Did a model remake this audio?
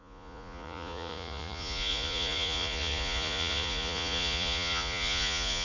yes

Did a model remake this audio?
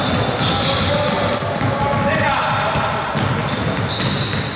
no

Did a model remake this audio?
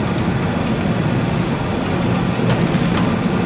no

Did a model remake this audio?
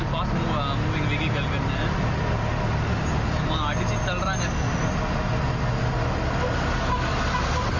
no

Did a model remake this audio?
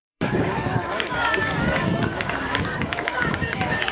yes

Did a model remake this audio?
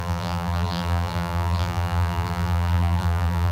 yes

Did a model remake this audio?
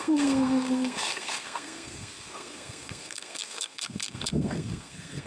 yes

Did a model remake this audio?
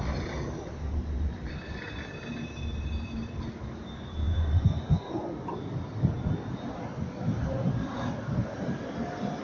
no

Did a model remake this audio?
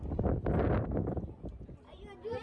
no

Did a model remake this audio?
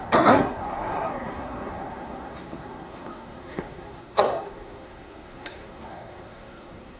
yes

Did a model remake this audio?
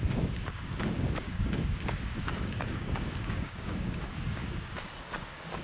yes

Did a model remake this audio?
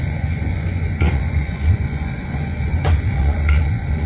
yes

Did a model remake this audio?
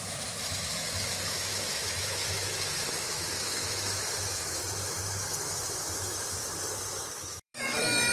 yes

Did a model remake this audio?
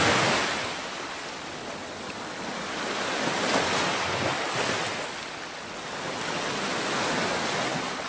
no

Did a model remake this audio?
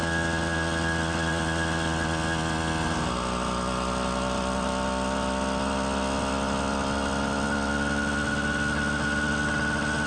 no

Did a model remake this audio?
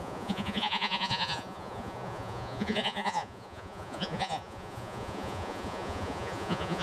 yes